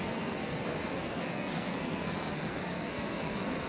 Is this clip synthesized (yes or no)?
yes